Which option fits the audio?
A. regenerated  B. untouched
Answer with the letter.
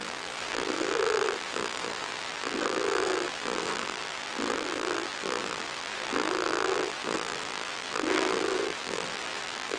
A